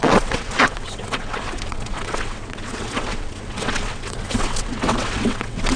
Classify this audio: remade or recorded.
remade